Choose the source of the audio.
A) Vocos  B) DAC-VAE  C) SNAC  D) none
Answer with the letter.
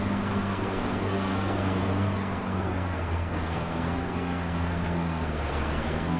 C